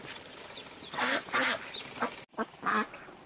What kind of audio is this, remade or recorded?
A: recorded